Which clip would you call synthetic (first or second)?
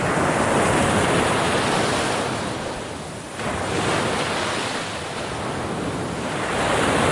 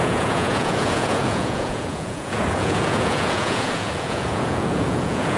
second